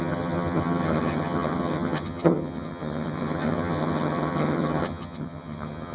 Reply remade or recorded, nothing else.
remade